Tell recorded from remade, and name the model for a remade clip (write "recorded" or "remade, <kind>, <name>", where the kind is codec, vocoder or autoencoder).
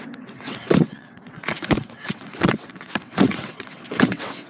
remade, vocoder, WaveNeXt